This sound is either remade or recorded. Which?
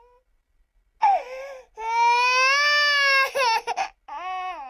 recorded